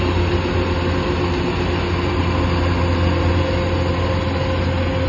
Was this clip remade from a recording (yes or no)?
no